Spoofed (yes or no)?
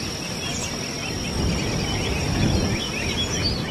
no